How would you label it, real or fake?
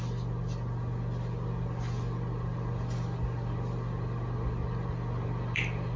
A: real